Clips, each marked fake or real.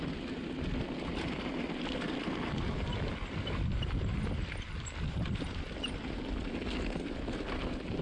real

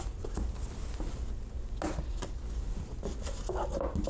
real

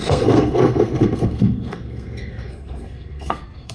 fake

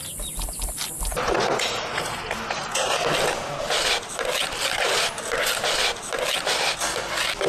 real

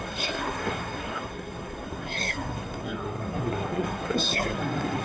fake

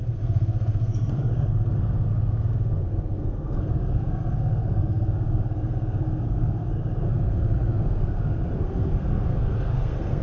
fake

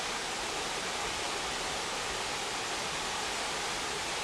real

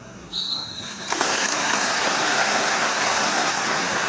fake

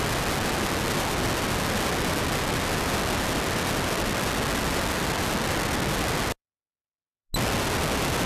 real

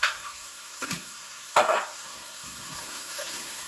fake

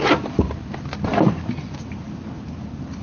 real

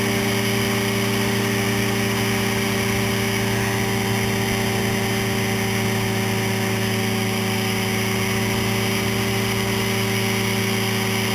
real